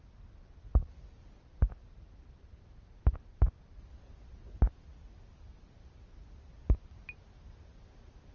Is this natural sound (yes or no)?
yes